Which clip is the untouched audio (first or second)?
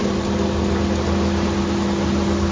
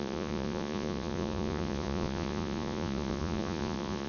first